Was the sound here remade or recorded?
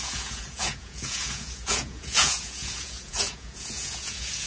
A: remade